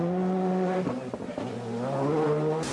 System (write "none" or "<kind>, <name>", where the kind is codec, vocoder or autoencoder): none